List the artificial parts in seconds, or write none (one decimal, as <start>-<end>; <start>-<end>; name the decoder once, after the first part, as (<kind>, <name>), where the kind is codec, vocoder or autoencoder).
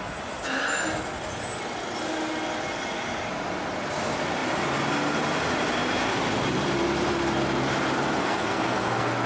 8.2-9.3 (codec, SNAC)